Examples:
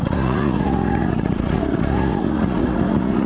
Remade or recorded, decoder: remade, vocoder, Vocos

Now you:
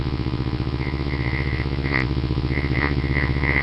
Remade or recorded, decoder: remade, vocoder, Vocos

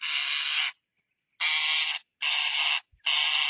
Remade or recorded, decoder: recorded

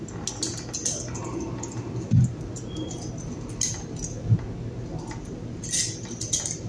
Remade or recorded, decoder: recorded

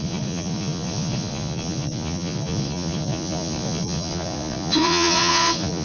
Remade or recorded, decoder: remade, vocoder, Vocos